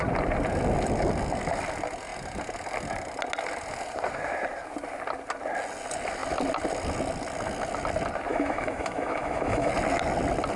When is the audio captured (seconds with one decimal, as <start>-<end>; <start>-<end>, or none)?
0.0-8.3; 9.7-10.6